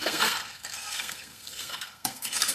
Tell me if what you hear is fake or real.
fake